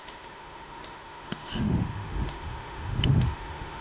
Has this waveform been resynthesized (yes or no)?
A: yes